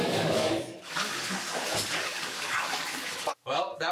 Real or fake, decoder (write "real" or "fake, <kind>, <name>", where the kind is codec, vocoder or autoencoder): fake, codec, DAC